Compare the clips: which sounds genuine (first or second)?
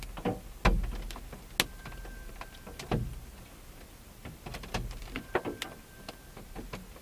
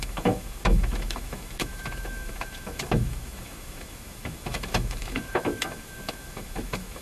first